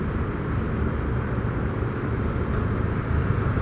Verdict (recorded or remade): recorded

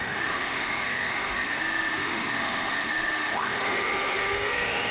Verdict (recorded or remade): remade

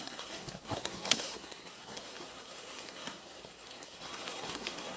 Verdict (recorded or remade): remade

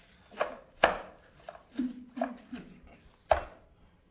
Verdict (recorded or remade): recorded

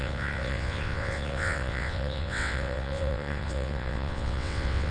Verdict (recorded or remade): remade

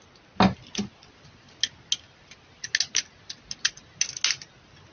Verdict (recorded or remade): recorded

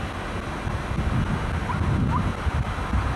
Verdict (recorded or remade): recorded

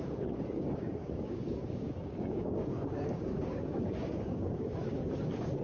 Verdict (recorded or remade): remade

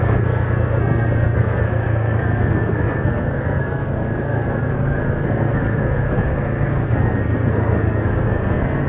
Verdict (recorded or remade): remade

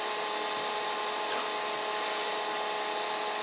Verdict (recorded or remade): recorded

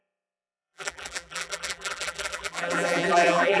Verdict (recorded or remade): remade